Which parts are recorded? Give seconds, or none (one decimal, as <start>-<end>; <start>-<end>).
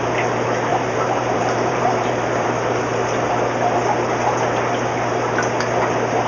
0.0-0.7; 3.3-6.3